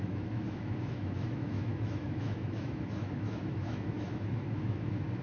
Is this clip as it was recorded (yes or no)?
no